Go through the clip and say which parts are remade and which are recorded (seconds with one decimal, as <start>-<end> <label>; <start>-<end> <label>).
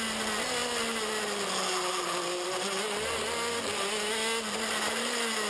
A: 0.0-5.5 recorded